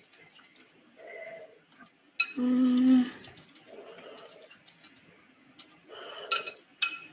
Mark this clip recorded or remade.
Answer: recorded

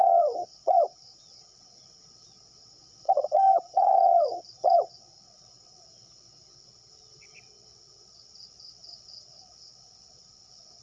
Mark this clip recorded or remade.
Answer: remade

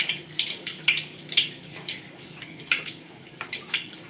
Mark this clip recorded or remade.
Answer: remade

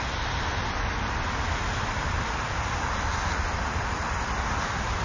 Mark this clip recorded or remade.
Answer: recorded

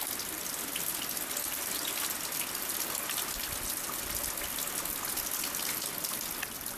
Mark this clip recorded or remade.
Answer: recorded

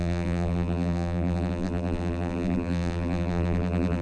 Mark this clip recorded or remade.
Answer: remade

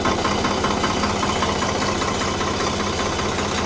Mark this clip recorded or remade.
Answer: recorded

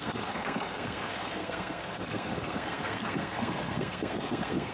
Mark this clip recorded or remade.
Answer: remade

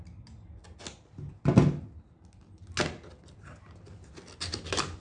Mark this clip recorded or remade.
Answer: recorded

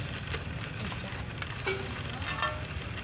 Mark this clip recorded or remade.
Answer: recorded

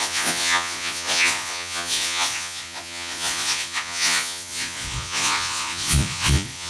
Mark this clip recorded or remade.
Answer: remade